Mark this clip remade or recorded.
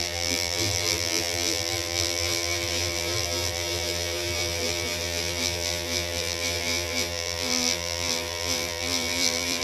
remade